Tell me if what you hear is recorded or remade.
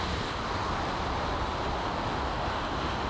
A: recorded